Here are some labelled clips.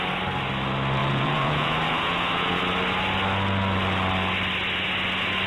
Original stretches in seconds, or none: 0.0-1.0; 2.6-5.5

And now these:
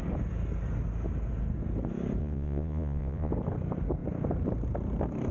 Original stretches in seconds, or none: 0.0-2.2; 3.3-5.3

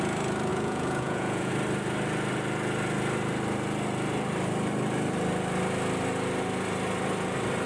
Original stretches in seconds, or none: 0.0-0.5; 1.5-7.7

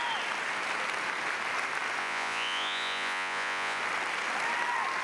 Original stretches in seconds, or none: 0.0-2.0; 3.8-5.0